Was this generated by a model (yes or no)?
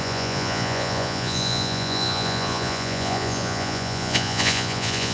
yes